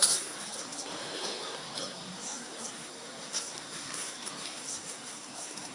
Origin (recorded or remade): remade